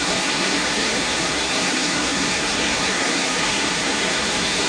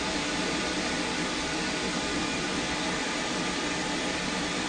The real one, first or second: second